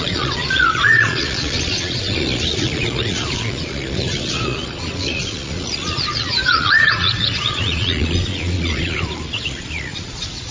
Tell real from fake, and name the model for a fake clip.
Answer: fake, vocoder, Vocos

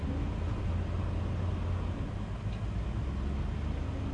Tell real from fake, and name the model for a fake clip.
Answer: real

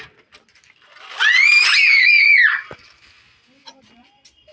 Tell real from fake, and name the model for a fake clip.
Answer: real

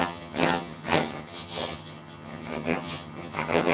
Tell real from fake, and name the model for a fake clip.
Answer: fake, vocoder, HiFi-GAN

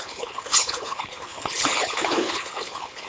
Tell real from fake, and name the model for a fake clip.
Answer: fake, codec, HILCodec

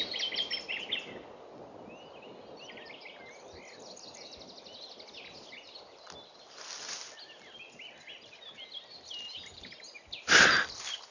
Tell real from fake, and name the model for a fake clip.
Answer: real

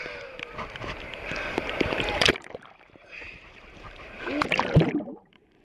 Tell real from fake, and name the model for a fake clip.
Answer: fake, vocoder, BigVGAN v2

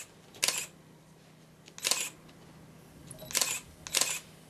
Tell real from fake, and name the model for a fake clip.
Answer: real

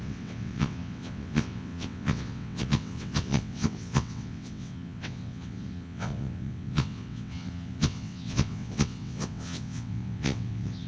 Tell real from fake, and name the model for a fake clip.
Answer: fake, vocoder, WaveNeXt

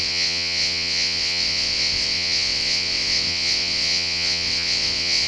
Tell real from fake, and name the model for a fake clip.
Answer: fake, vocoder, WaveNeXt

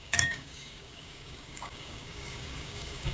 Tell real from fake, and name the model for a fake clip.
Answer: fake, codec, DAC